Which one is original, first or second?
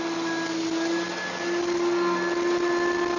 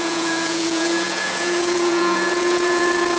first